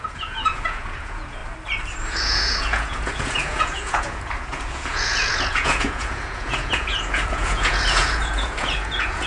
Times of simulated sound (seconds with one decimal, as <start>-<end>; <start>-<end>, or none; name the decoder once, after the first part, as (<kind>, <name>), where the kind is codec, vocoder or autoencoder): 0.0-1.4 (vocoder, Vocos); 2.0-9.3